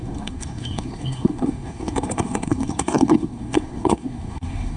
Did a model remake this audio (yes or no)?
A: yes